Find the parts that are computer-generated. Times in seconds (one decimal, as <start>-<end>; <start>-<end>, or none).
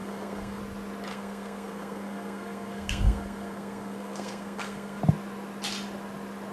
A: 0.0-0.6; 1.1-5.0